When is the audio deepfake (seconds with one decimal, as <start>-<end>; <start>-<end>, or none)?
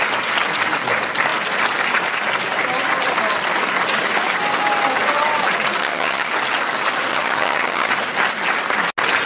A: 5.8-6.3; 7.1-7.9